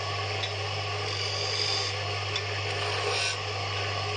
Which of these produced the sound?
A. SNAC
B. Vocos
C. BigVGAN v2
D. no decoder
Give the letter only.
D